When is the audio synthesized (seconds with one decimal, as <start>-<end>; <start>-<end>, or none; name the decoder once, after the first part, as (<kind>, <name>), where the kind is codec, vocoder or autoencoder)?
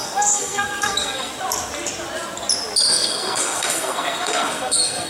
0.0-1.3 (codec, SNAC); 2.9-5.1